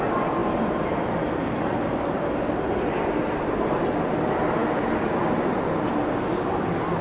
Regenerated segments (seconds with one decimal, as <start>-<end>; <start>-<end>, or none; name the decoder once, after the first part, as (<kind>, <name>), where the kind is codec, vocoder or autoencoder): none

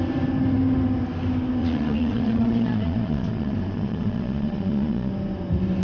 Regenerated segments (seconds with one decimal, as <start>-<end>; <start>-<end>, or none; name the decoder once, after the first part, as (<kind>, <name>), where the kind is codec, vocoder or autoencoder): 1.6-5.1 (vocoder, Vocos)